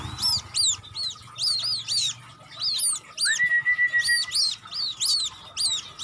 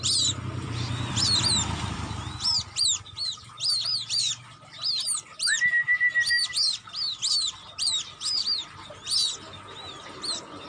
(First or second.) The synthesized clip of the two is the second